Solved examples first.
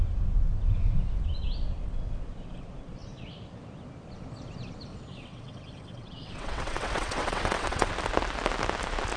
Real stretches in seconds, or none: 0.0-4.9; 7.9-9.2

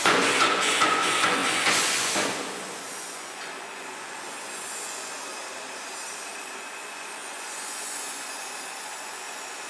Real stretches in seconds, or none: 5.3-6.4

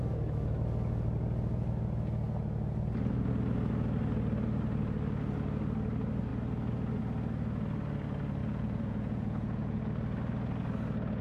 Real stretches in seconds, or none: 0.0-8.4; 9.8-11.2

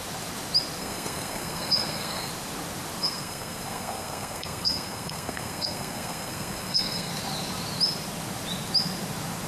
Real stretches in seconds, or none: 0.0-0.8; 2.3-3.0; 7.1-9.5

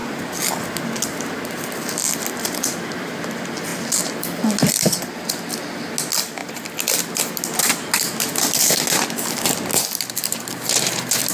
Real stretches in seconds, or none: 0.0-11.3

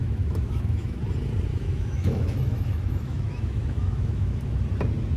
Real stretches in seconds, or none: 1.0-1.5; 4.6-5.2

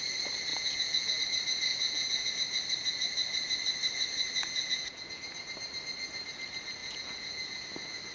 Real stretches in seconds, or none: 0.0-0.5; 1.2-1.7; 2.3-4.4; 5.2-6.8; 7.6-8.1

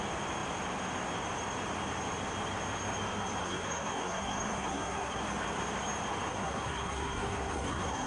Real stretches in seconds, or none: 0.0-3.4; 5.2-6.3